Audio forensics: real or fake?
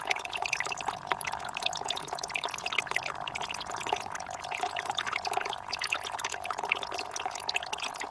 fake